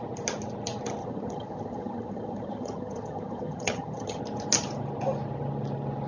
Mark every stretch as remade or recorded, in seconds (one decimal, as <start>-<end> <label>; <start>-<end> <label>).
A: 0.0-1.0 recorded; 1.0-4.2 remade; 4.2-6.1 recorded